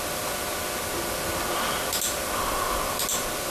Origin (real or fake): real